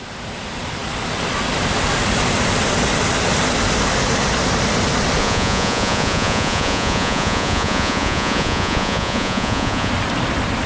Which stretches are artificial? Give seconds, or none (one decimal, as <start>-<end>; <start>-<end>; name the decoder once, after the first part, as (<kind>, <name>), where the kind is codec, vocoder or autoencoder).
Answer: 5.2-9.9 (vocoder, Vocos)

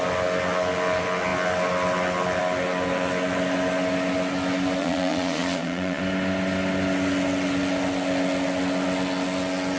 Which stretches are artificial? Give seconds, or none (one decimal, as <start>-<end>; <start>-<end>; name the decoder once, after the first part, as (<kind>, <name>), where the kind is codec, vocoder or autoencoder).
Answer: 4.8-6.0 (vocoder, Vocos)

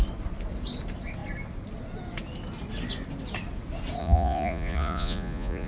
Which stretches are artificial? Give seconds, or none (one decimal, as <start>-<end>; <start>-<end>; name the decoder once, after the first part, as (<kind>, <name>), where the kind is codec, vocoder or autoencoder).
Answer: 4.0-5.7 (vocoder, Vocos)

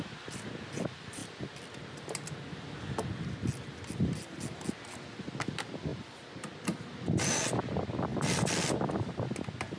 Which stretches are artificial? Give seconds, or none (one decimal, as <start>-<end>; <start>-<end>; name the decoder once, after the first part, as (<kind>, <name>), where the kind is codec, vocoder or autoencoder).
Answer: none